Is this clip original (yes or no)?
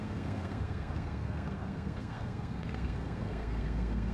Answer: no